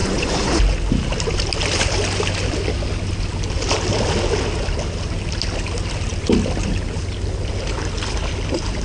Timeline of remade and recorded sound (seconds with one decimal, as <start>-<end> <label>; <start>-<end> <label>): 0.0-0.6 remade; 0.6-8.8 recorded